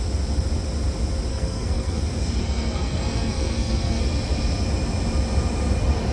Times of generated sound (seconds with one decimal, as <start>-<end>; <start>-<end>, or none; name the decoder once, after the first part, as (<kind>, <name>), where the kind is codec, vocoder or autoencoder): 1.3-2.0 (codec, SNAC); 2.4-4.0